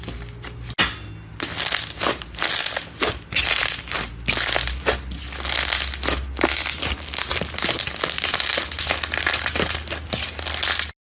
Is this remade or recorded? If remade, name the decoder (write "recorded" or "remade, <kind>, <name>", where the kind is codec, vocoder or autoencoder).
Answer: recorded